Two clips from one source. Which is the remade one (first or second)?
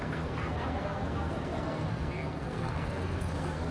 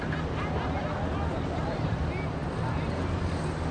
first